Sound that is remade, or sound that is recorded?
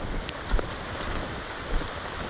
recorded